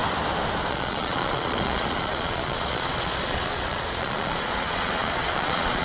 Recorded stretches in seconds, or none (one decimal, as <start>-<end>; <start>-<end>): 0.0-0.7